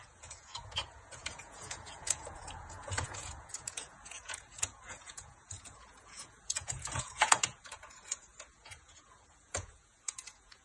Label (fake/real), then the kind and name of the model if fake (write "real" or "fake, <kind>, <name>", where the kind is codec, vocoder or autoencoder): fake, vocoder, Vocos